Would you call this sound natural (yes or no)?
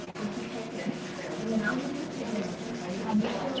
yes